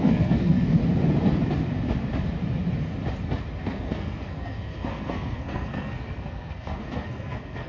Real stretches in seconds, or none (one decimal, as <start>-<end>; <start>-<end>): 0.8-3.6